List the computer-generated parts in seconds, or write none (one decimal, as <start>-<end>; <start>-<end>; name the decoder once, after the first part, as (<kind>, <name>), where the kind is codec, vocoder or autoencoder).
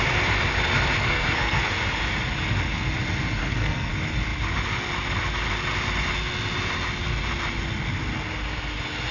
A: 1.0-1.6 (codec, SNAC); 3.4-3.9